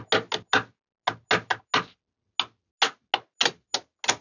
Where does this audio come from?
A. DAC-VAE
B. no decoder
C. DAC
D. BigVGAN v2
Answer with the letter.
B